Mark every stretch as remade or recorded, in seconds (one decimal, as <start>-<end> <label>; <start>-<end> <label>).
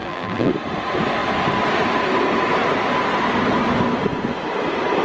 0.0-0.5 remade; 0.5-5.0 recorded